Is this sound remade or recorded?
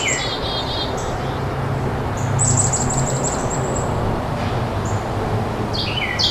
recorded